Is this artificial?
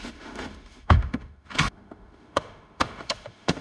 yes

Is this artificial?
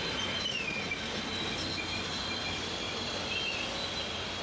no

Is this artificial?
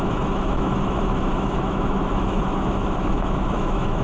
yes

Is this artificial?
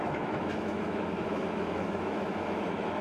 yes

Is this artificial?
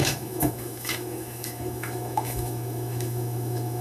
yes